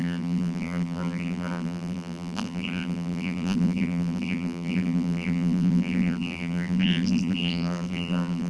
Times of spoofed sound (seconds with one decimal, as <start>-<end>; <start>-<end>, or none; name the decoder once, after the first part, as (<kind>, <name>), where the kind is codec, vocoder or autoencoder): 0.0-8.5 (vocoder, BigVGAN v2)